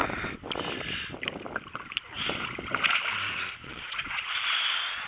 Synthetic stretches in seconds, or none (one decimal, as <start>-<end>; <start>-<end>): 3.6-4.3